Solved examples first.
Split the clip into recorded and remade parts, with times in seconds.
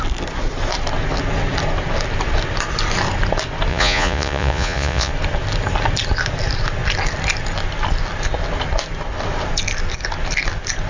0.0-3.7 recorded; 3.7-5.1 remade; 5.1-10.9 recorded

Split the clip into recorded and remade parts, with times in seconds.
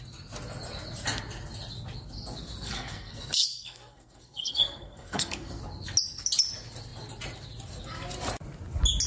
0.0-2.4 recorded; 2.4-5.6 remade; 5.6-9.1 recorded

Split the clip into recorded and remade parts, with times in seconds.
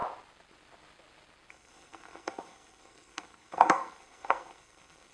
0.0-1.5 recorded; 1.5-5.1 remade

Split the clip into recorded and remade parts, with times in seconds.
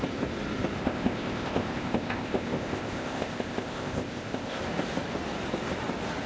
0.0-0.8 recorded; 0.8-4.6 remade; 4.6-6.3 recorded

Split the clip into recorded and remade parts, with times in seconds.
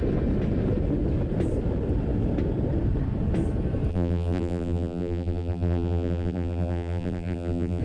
0.0-3.9 recorded; 3.9-7.8 remade